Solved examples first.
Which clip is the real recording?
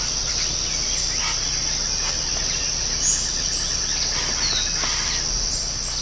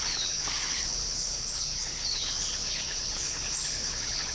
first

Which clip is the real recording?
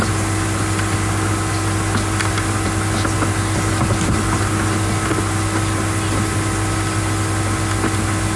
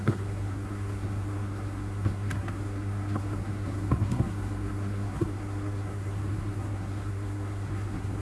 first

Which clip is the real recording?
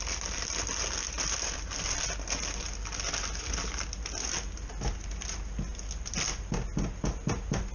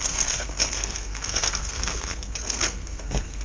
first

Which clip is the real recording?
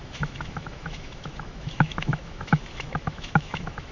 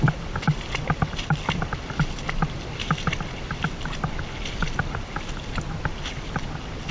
second